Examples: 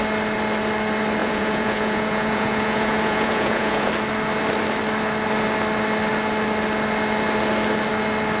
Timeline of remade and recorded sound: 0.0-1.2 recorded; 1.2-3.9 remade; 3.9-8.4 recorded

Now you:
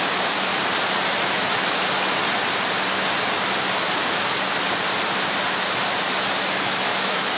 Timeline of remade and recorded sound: 0.0-0.5 remade; 0.5-1.3 recorded; 1.3-2.2 remade; 2.2-6.3 recorded; 6.3-7.4 remade

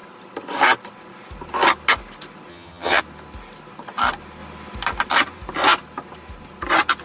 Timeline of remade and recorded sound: 0.0-2.5 recorded; 2.5-3.0 remade; 3.0-7.0 recorded